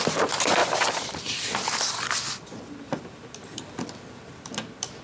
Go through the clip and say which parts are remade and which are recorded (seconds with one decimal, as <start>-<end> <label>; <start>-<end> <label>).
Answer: 0.0-5.0 remade